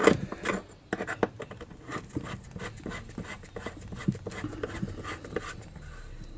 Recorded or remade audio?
recorded